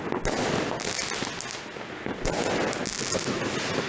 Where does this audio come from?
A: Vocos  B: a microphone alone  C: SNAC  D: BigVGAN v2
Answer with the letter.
B